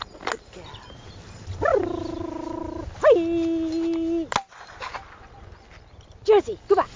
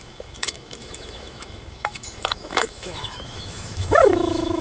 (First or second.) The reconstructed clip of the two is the second